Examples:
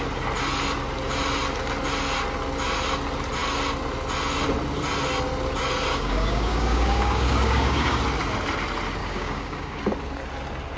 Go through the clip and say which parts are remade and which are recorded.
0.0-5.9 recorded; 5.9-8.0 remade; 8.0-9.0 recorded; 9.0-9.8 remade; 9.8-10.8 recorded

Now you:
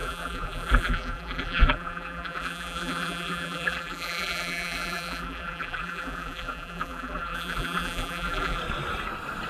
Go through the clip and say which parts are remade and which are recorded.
0.0-8.6 remade; 8.6-9.5 recorded

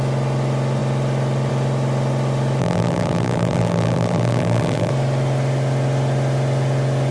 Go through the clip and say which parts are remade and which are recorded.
0.0-2.6 recorded; 2.6-4.9 remade; 4.9-7.1 recorded

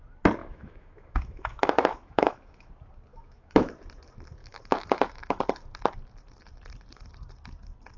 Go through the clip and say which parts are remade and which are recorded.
0.0-0.4 recorded; 0.4-2.7 remade; 2.7-3.1 recorded; 3.1-3.7 remade; 3.7-4.4 recorded; 4.4-5.4 remade; 5.4-8.0 recorded

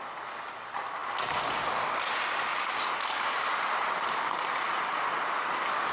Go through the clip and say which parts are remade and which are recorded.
0.0-5.9 recorded

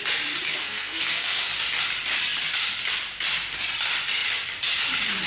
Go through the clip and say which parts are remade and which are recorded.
0.0-0.5 recorded; 0.5-1.5 remade; 1.5-5.3 recorded

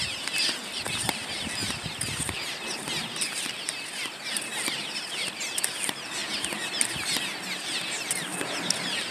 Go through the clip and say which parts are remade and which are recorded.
0.0-1.6 remade; 1.6-3.9 recorded; 3.9-6.2 remade; 6.2-9.1 recorded